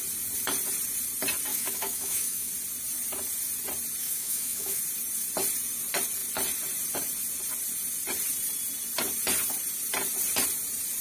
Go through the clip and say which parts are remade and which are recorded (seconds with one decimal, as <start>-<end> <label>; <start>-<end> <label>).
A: 0.0-1.5 recorded; 1.5-2.5 remade; 2.5-4.0 recorded; 4.0-4.8 remade; 4.8-11.0 recorded